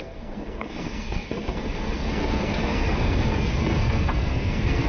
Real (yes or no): no